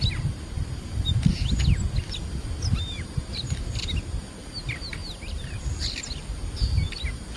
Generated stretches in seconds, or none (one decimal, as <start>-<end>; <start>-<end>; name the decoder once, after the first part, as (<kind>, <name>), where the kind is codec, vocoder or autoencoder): 2.8-3.5 (vocoder, BigVGAN v2); 5.0-5.6

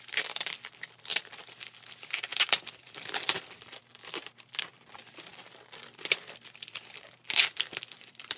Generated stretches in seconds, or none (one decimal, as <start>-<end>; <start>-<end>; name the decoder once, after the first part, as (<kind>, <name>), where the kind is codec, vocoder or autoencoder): 0.0-8.4 (vocoder, BigVGAN v2)

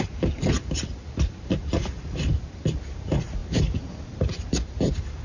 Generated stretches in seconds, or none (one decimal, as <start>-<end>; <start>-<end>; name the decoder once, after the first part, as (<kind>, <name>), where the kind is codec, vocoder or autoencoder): 0.0-5.2 (vocoder, BigVGAN v2)

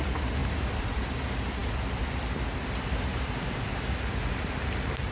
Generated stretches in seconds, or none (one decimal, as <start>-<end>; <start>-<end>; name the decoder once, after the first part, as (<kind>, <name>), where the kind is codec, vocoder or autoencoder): 0.4-1.0 (vocoder, BigVGAN v2); 3.1-3.8

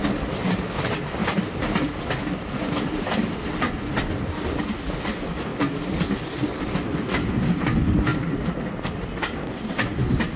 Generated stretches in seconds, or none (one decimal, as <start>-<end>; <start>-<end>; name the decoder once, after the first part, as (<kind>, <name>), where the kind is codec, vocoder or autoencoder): 1.2-3.9 (vocoder, BigVGAN v2)